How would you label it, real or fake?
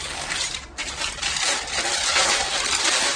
fake